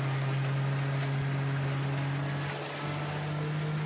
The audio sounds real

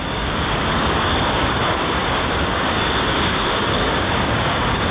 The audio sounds fake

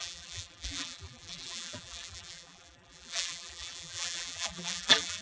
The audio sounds fake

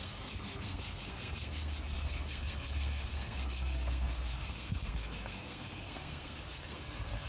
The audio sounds fake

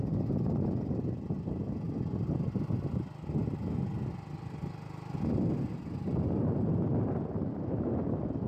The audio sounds real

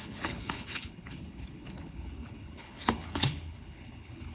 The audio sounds fake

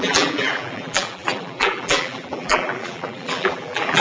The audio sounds fake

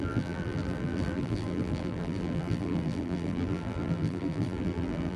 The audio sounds fake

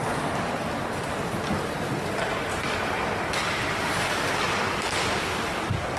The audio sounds real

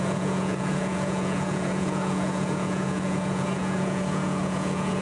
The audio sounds fake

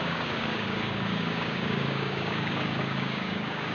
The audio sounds fake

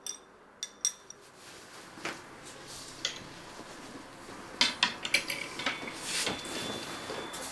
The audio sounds real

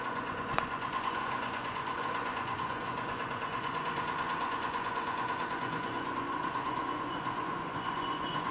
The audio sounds fake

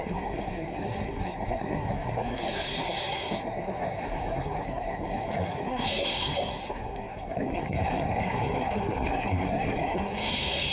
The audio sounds fake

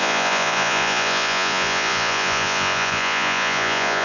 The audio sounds fake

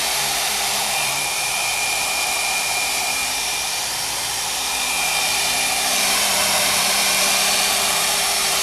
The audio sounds fake